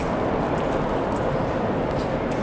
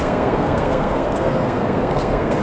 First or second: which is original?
first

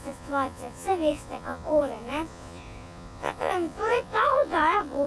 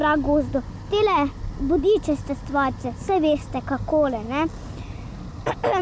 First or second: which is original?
second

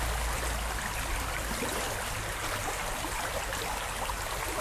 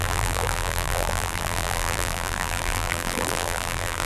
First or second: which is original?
first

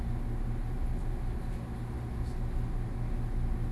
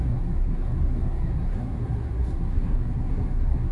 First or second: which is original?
first